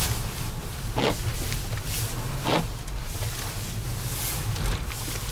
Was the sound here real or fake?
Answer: real